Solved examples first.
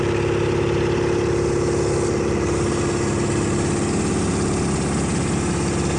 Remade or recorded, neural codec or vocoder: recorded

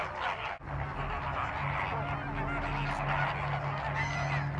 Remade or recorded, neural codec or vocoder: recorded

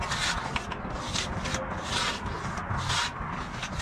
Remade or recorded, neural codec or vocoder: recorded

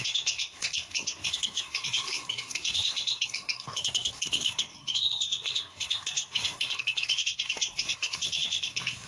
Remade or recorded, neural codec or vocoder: remade, codec, SNAC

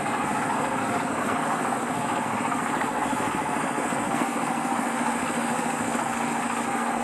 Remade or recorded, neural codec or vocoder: remade, codec, SNAC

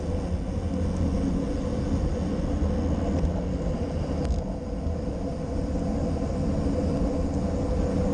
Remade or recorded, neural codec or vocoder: recorded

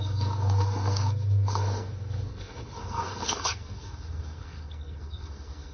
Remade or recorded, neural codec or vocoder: remade, codec, SNAC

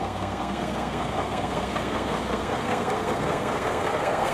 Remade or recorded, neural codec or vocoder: remade, codec, SNAC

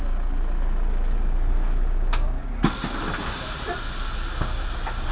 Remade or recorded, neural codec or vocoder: recorded